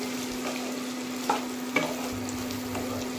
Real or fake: real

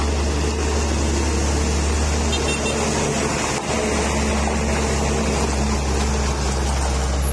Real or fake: real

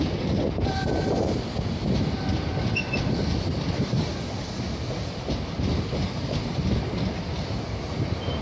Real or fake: real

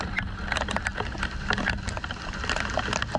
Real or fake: real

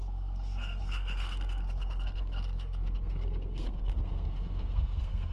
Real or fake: fake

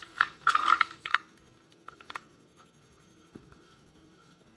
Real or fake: fake